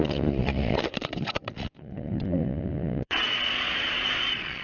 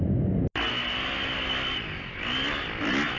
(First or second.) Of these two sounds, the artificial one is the first